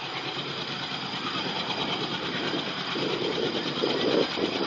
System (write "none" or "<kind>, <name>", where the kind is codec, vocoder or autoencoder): vocoder, BigVGAN v2